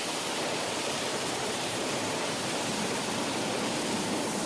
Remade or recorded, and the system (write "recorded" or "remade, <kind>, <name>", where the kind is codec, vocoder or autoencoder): remade, vocoder, BigVGAN v2